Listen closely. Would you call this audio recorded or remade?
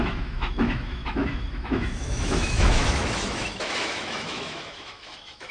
remade